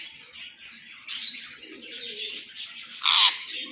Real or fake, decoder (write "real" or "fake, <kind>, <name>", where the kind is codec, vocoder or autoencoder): real